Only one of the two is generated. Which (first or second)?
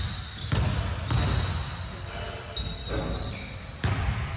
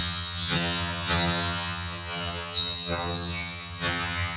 second